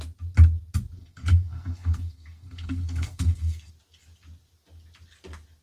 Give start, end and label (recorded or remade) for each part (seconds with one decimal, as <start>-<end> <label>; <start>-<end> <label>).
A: 0.0-1.0 recorded; 1.0-3.7 remade; 3.7-5.6 recorded